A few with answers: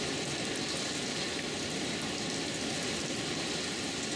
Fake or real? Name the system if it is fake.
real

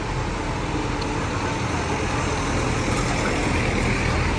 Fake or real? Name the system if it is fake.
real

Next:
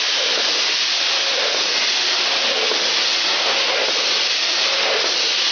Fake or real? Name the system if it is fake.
real